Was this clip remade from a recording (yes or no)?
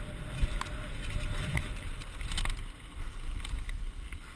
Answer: no